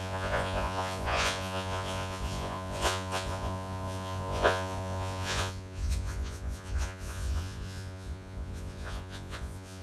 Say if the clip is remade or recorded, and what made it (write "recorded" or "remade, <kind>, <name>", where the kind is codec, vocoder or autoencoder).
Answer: remade, vocoder, Vocos